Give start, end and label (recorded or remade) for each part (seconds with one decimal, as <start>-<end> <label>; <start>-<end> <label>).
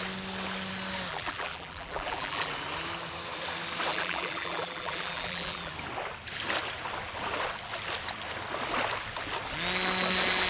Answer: 0.0-1.1 recorded; 1.1-2.5 remade; 2.5-3.9 recorded; 3.9-5.7 remade; 5.7-10.5 recorded